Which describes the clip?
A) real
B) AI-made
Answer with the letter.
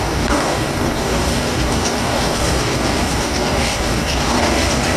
B